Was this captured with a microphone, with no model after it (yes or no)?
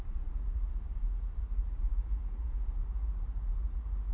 no